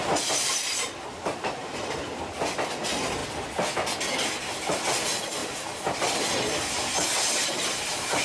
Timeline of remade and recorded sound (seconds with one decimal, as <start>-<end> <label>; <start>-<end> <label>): 0.0-1.6 recorded; 1.6-2.5 remade; 2.5-5.4 recorded; 5.4-6.0 remade; 6.0-8.2 recorded